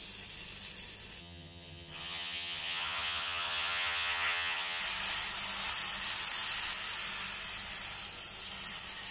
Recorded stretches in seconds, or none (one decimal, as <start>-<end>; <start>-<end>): 0.0-1.2; 4.8-9.1

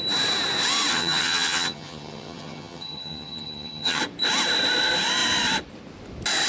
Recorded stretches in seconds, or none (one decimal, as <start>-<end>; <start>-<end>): 0.0-0.9; 4.0-6.5